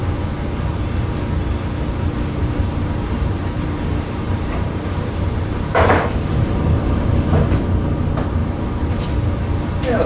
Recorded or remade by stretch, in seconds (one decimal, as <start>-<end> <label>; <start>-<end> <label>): 0.0-2.4 recorded; 2.4-7.1 remade; 7.1-8.4 recorded; 8.4-8.9 remade; 8.9-10.1 recorded